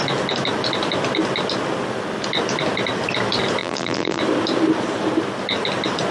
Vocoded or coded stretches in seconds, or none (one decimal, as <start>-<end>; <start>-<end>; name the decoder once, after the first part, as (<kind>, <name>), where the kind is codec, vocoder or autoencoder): 3.6-4.2 (vocoder, BigVGAN v2)